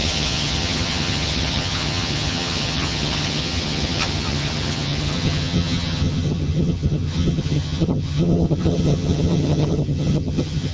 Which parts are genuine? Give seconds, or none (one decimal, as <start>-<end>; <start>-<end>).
none